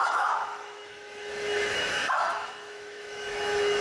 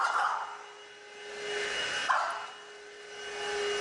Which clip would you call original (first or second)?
second